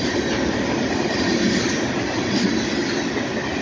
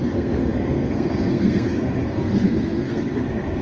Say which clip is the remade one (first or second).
second